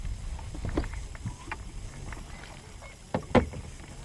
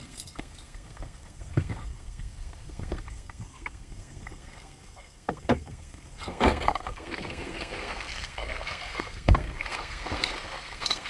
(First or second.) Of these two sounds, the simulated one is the second